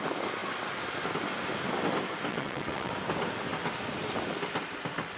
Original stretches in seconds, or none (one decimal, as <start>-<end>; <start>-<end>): 0.0-2.3; 2.9-5.2